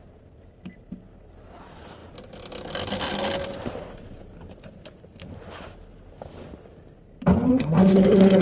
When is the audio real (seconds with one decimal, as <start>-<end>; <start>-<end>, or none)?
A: 0.0-7.5